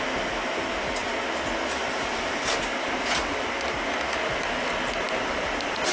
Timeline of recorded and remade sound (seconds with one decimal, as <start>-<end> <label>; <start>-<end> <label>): 0.0-5.9 recorded